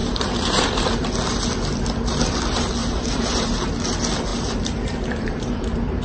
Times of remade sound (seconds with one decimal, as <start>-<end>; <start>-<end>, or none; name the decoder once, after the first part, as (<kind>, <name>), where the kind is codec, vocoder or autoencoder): 0.0-1.1 (vocoder, BigVGAN v2); 2.8-3.7; 4.3-6.0